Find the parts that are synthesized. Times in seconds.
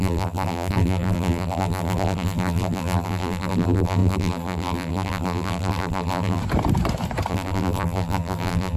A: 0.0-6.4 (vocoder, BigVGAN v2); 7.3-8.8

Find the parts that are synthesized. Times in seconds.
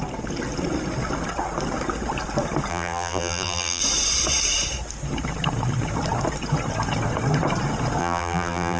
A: 2.7-3.8 (vocoder, BigVGAN v2); 8.0-8.8